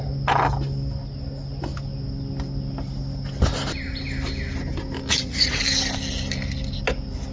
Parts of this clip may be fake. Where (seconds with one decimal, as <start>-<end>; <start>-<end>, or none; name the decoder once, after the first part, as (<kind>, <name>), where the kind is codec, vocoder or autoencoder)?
5.1-5.6 (vocoder, Vocos)

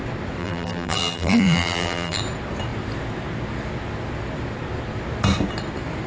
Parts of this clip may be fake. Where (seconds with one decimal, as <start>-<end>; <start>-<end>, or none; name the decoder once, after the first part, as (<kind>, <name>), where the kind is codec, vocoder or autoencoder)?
0.4-2.2 (vocoder, BigVGAN v2)

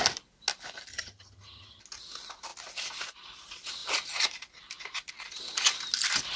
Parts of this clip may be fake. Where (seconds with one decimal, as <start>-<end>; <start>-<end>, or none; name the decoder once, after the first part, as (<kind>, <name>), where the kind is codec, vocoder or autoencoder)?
0.9-1.8 (vocoder, HiFi-GAN)

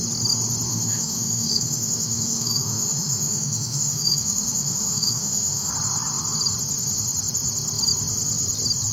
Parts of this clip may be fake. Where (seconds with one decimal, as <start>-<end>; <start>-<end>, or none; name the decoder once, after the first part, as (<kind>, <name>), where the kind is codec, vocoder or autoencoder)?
0.7-5.7 (autoencoder, DAC-VAE)